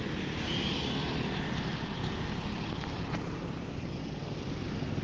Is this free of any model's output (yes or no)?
yes